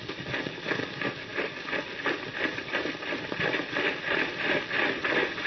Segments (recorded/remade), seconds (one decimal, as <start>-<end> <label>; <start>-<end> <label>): 0.0-1.3 recorded; 1.3-4.5 remade; 4.5-5.5 recorded